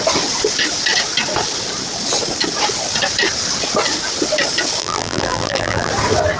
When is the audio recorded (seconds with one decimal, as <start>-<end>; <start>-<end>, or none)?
0.0-4.8; 5.9-6.4